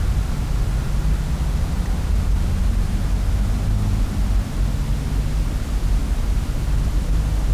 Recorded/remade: recorded